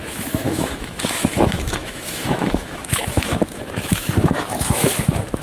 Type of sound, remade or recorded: remade